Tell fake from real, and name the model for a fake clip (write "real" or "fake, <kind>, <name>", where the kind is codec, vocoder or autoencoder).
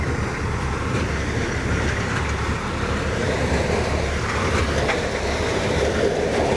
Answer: fake, vocoder, BigVGAN v2